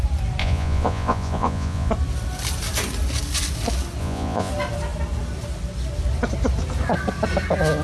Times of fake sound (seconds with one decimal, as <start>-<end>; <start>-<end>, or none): 0.4-1.9; 4.0-4.5